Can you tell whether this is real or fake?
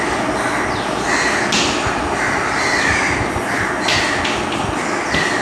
real